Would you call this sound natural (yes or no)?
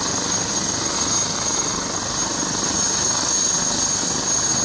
yes